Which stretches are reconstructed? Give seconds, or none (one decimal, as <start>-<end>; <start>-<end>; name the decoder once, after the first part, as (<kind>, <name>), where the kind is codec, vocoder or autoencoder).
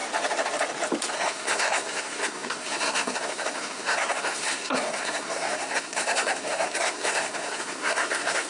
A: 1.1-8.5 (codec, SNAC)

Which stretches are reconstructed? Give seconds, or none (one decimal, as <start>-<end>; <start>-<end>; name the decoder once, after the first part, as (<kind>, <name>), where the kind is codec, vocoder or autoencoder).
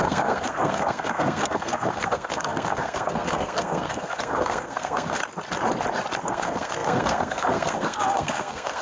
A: 0.0-5.2 (codec, SNAC); 6.2-8.8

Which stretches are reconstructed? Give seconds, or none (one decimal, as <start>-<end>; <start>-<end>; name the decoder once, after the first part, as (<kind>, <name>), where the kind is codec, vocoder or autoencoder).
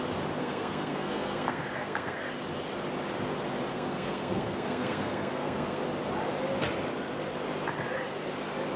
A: 0.4-2.3 (codec, SNAC); 3.7-5.8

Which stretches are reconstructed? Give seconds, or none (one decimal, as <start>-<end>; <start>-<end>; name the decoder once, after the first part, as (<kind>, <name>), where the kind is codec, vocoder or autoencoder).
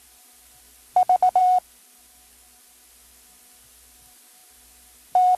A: none